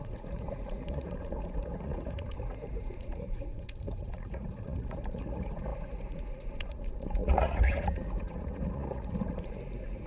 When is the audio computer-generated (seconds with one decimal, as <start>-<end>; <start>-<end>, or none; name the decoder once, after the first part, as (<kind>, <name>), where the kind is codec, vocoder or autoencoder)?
0.0-10.1 (vocoder, Vocos)